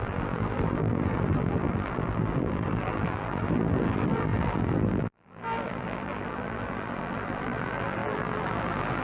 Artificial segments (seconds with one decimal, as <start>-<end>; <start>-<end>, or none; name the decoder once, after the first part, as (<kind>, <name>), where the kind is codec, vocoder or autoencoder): 0.0-9.0 (vocoder, BigVGAN v2)